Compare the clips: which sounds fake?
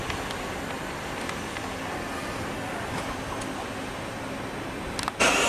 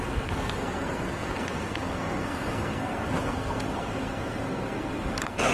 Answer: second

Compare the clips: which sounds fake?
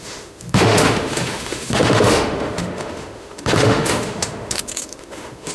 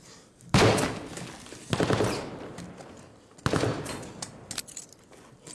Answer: first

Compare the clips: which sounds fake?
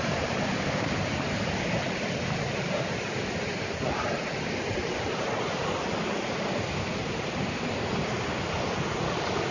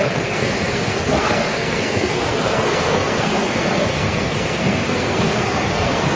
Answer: second